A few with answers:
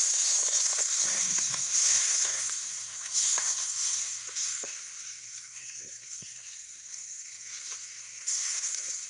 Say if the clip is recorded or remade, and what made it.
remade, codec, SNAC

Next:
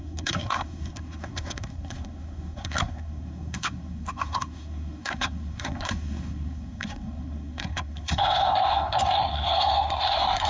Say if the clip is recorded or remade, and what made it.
remade, codec, SNAC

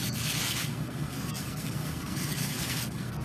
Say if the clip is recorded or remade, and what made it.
remade, codec, SNAC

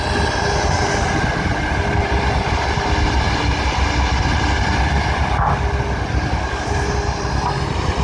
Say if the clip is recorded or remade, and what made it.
recorded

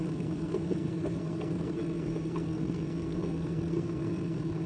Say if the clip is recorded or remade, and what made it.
remade, codec, SNAC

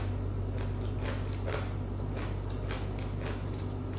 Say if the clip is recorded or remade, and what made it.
recorded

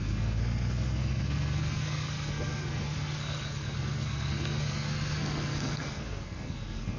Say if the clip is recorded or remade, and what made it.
remade, codec, SNAC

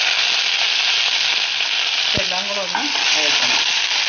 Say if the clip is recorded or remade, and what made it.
recorded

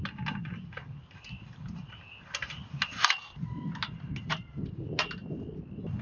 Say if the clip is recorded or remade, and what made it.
recorded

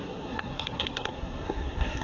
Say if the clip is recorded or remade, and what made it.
remade, codec, SNAC